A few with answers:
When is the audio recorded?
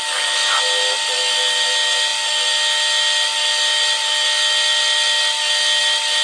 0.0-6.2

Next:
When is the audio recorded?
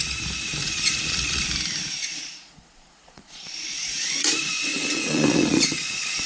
0.0-0.6; 1.4-2.1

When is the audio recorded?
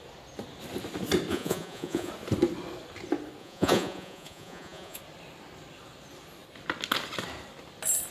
0.0-1.3; 2.1-3.4; 5.0-8.1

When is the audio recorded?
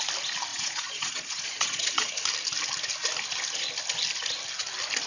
0.0-0.5; 2.1-5.1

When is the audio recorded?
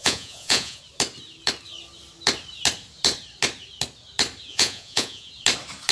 0.8-4.5; 5.3-5.9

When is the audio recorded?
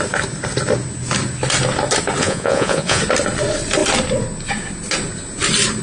0.0-2.2; 3.0-5.8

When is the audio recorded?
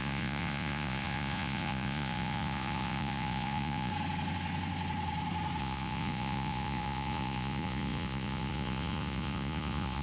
3.9-5.6